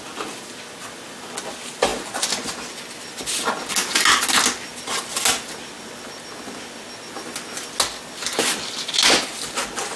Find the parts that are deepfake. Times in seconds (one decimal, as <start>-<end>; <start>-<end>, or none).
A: none